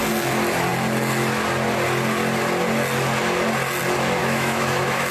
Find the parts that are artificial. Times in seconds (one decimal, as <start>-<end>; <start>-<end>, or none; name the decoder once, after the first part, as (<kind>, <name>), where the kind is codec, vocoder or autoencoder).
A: 4.2-5.1 (autoencoder, DAC-VAE)